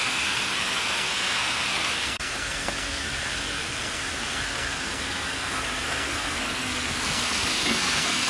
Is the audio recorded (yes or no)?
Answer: no